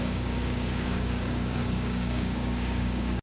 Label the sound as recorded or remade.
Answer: remade